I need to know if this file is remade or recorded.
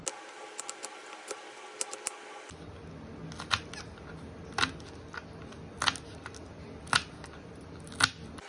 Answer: recorded